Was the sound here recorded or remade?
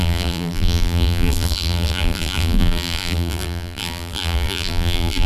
remade